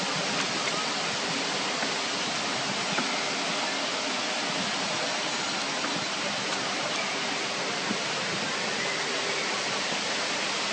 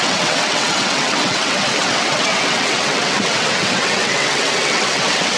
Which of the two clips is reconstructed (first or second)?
second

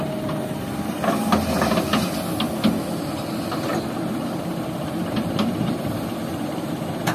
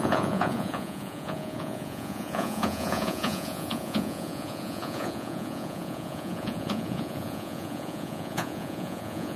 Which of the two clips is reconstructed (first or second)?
second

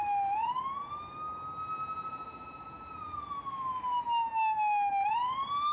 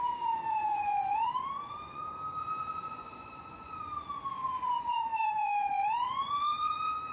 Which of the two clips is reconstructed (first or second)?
second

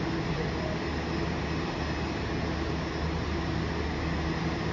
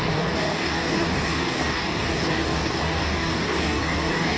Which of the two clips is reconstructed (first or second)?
second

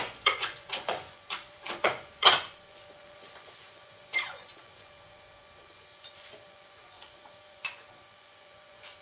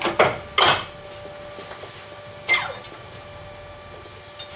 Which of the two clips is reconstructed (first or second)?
first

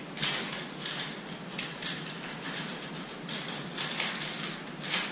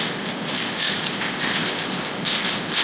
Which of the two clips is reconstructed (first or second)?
second